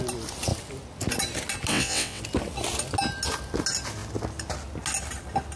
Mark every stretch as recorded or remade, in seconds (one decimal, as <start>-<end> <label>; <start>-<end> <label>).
0.0-1.7 recorded; 1.7-2.2 remade; 2.2-5.6 recorded